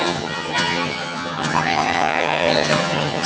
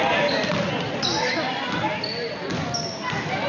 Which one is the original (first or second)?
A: second